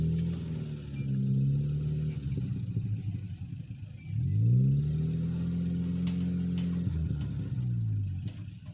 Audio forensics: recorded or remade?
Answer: recorded